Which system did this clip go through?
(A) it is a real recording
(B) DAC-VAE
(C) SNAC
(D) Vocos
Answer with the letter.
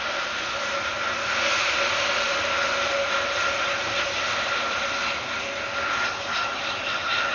A